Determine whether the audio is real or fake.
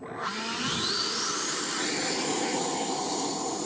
real